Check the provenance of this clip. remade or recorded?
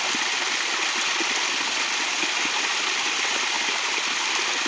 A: recorded